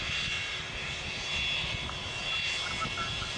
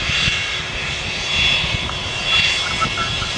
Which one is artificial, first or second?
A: second